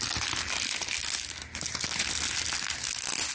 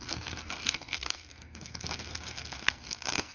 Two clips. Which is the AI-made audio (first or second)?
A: second